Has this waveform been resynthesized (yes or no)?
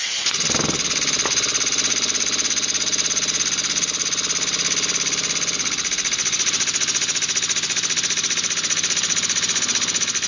no